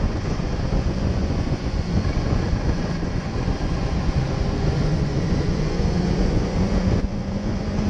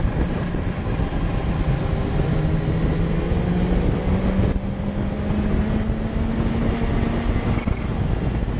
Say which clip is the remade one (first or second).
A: first